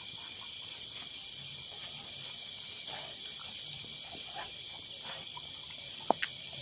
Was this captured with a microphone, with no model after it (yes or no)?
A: yes